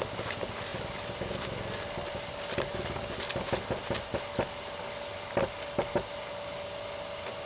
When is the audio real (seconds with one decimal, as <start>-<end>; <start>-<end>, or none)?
0.0-7.5

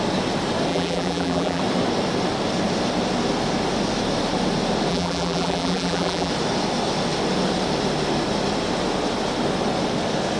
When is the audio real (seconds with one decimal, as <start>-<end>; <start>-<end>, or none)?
0.0-0.7; 1.6-4.9; 6.3-10.4

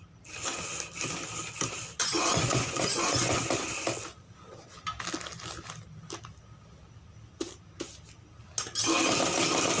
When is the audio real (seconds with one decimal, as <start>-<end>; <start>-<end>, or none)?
0.0-2.0; 3.4-9.8

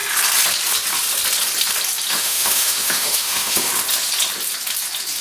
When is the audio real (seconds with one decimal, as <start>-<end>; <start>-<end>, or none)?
0.0-2.1; 3.7-5.2

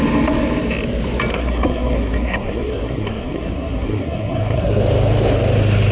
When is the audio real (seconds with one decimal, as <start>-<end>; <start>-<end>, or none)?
0.0-1.3; 4.8-5.9

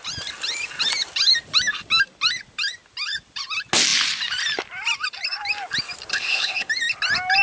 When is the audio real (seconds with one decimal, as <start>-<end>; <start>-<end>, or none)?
0.0-6.1; 6.7-7.4

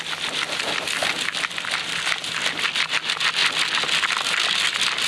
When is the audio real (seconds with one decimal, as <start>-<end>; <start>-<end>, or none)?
0.0-5.1

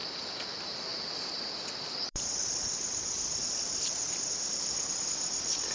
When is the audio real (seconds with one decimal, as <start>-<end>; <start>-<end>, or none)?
0.0-0.5